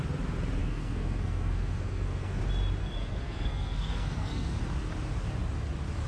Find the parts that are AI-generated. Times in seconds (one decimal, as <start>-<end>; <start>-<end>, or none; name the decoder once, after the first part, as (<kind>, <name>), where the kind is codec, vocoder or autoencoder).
0.6-2.4 (codec, SNAC); 2.8-4.6